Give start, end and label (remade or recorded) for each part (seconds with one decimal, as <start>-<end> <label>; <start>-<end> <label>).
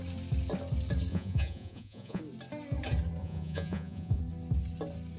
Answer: 0.0-1.1 recorded; 1.1-2.2 remade; 2.2-3.2 recorded; 3.2-4.2 remade; 4.2-5.2 recorded